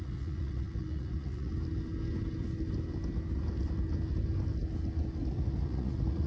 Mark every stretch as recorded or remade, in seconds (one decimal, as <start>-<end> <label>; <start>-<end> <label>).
0.0-1.5 remade; 1.5-5.3 recorded; 5.3-6.3 remade